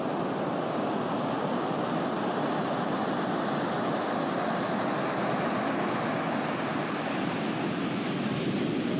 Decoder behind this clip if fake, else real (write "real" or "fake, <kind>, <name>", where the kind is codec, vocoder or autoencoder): real